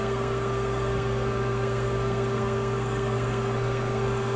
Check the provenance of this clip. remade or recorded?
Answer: remade